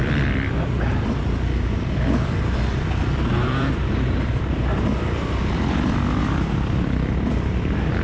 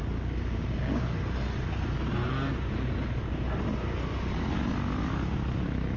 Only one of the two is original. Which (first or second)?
second